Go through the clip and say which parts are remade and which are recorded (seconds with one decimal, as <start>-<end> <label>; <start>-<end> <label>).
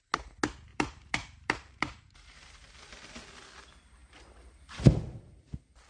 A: 0.0-0.7 recorded; 0.7-2.7 remade; 2.7-5.9 recorded